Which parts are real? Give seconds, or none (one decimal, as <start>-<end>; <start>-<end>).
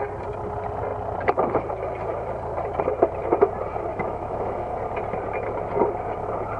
0.0-3.9; 4.7-6.6